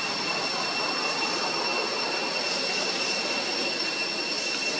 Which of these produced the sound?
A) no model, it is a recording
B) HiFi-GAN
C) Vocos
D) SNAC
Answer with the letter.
A